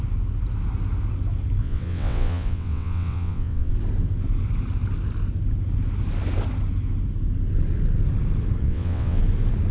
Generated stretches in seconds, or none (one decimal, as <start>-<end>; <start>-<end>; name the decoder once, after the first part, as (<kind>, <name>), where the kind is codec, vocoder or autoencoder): 1.6-3.7 (vocoder, WaveNeXt); 8.6-9.2